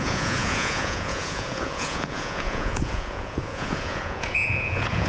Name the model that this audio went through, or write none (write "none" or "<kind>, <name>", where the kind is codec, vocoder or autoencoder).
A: vocoder, Vocos